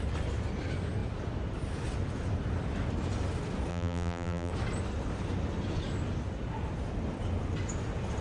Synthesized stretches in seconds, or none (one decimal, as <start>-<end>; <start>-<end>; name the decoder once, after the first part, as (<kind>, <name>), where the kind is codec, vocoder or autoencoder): 3.7-4.5 (vocoder, BigVGAN v2)